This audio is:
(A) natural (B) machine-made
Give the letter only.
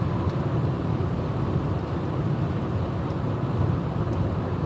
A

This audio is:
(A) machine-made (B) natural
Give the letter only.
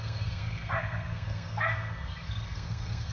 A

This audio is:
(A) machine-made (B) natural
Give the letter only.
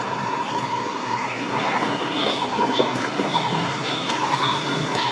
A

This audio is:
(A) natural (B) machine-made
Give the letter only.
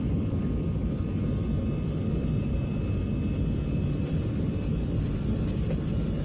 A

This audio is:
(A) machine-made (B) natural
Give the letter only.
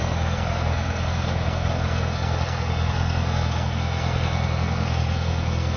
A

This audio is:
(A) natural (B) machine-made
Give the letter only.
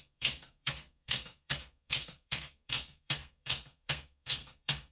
B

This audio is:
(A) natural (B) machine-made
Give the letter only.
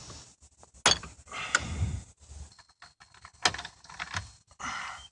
A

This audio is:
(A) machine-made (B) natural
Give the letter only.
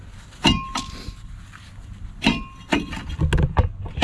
B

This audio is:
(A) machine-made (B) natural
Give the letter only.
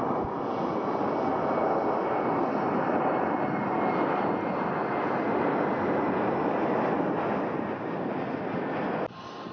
B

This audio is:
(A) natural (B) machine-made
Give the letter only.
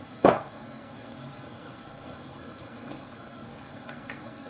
B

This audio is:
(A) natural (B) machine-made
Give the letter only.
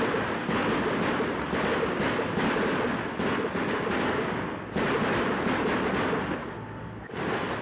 A